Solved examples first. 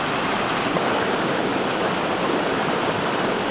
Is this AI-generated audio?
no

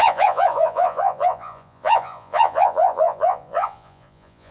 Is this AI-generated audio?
yes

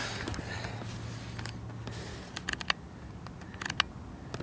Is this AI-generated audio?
no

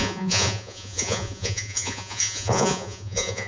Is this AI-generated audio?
yes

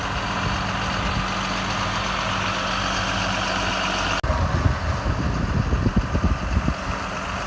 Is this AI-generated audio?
no